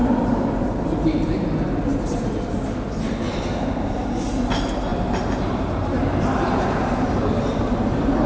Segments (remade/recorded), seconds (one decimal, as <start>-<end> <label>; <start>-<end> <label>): 0.0-1.4 remade; 1.4-4.9 recorded; 4.9-7.6 remade; 7.6-8.3 recorded